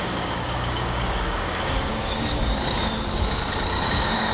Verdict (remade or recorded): remade